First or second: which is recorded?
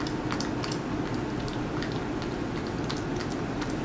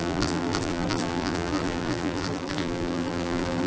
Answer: first